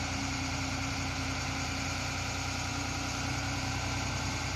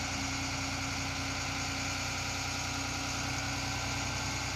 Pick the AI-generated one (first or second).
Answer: first